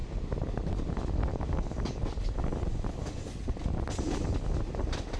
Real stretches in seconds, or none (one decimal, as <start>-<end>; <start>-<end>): 0.0-1.3; 2.0-5.2